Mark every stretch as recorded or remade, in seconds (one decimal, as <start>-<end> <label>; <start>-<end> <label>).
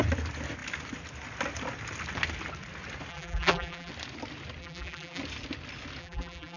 0.0-3.1 recorded; 3.1-3.9 remade; 3.9-4.6 recorded; 4.6-5.2 remade; 5.2-6.0 recorded; 6.0-6.6 remade